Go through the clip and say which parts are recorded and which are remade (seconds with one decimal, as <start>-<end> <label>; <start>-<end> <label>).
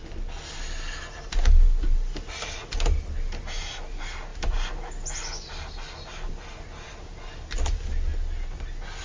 0.0-9.0 recorded